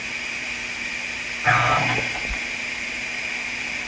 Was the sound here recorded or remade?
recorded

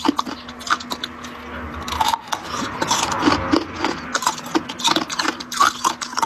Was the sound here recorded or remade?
recorded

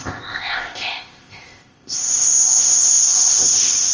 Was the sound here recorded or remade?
remade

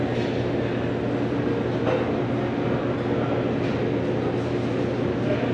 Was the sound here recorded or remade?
recorded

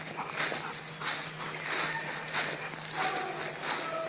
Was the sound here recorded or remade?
recorded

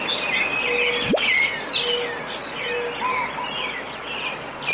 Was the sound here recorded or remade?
recorded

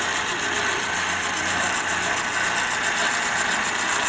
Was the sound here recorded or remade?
recorded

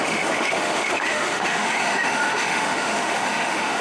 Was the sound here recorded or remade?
remade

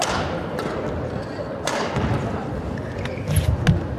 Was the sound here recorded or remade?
recorded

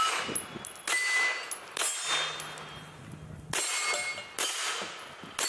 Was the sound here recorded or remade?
recorded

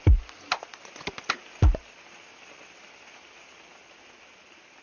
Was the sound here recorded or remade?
recorded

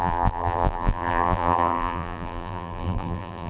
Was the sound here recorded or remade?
remade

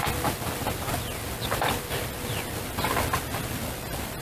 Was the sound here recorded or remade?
recorded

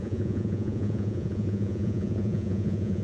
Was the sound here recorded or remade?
remade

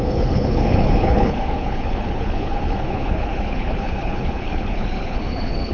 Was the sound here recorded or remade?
remade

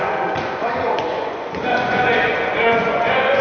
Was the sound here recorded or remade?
remade